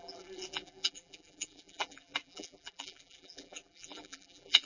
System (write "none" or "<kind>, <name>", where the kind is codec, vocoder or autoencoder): vocoder, BigVGAN v2